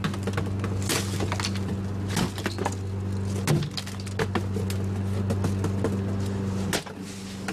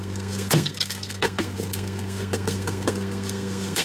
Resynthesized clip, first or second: second